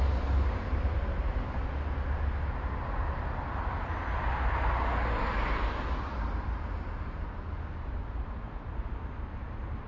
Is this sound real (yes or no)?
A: yes